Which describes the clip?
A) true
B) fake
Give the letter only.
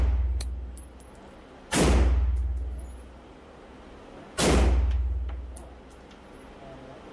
A